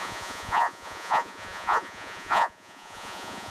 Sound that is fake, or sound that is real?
fake